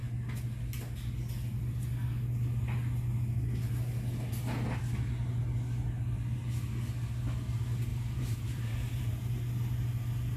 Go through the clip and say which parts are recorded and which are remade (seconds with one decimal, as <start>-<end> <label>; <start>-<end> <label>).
0.0-7.9 recorded; 7.9-9.2 remade; 9.2-10.4 recorded